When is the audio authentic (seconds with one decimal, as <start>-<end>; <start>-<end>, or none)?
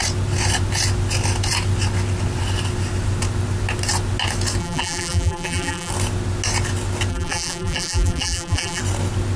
0.0-4.6; 5.9-7.1; 8.8-9.4